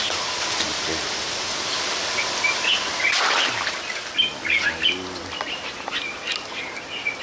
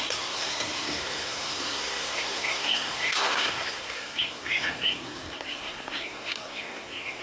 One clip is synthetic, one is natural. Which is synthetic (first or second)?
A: second